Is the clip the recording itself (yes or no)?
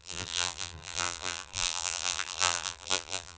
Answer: no